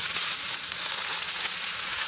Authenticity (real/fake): fake